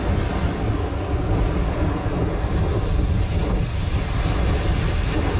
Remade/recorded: recorded